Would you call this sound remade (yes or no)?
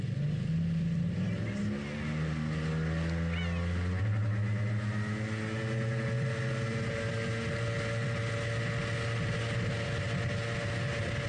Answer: no